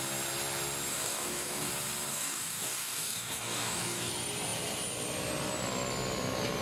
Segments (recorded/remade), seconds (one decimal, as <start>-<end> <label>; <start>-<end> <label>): 0.0-0.9 recorded; 0.9-1.7 remade; 1.7-2.1 recorded; 2.1-4.1 remade; 4.1-6.6 recorded